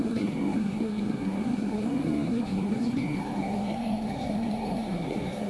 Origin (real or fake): fake